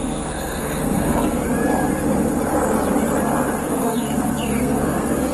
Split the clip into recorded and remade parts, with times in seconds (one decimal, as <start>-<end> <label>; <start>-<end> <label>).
0.0-1.4 remade; 1.4-3.6 recorded; 3.6-5.3 remade